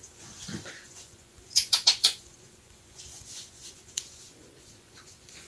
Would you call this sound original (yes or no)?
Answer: no